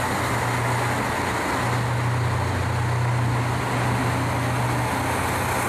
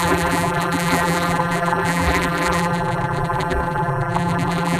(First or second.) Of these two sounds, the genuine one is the first